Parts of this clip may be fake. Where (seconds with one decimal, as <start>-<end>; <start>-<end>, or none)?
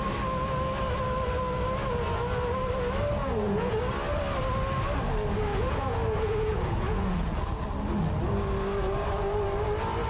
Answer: 3.2-3.7; 5.5-7.6